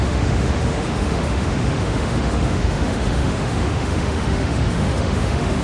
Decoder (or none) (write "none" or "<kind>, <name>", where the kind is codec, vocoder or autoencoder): autoencoder, DAC-VAE